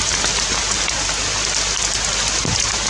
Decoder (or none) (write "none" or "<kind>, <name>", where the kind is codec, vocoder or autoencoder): none